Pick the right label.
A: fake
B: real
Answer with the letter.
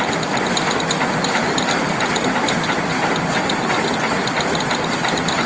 B